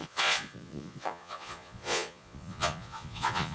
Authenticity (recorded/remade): remade